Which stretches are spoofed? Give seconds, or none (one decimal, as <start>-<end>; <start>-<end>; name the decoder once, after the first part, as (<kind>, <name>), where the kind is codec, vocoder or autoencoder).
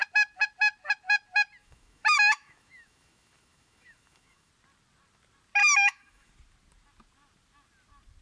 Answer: 1.6-4.5 (autoencoder, DAC-VAE); 5.6-6.3